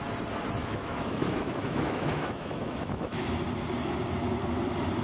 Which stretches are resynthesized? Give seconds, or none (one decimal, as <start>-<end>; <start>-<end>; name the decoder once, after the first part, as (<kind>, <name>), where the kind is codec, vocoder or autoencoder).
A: 0.6-3.3 (autoencoder, DAC-VAE)